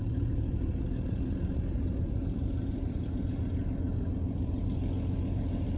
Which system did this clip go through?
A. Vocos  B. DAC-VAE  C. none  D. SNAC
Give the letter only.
C